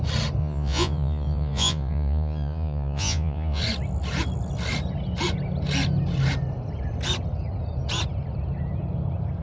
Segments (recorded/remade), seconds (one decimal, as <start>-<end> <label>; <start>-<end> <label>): 0.0-0.4 recorded; 0.4-3.6 remade; 3.6-9.4 recorded